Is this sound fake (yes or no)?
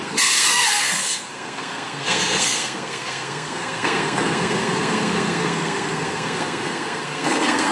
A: yes